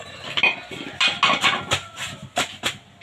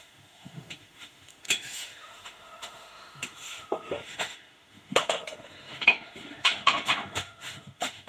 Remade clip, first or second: second